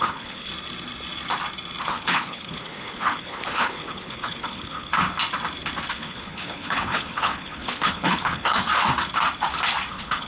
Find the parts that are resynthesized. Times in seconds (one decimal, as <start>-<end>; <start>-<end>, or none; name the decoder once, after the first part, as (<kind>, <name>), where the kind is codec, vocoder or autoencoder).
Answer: 0.0-0.5 (codec, HILCodec); 1.8-4.9; 5.9-8.7; 9.9-10.3